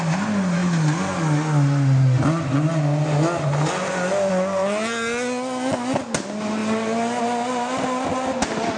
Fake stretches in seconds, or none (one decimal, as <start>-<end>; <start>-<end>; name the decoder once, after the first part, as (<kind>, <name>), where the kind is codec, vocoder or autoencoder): none

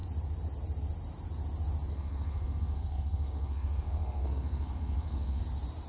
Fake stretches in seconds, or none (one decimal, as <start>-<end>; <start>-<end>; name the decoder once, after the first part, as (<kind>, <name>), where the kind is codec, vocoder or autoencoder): 1.9-5.4 (codec, SNAC)